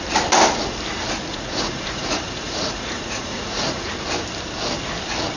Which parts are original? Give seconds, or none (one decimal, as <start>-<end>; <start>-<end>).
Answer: 0.0-1.3; 3.9-5.4